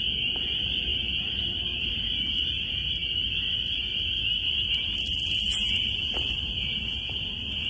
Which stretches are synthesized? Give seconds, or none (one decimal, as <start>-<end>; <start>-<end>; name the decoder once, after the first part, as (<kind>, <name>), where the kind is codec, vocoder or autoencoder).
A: none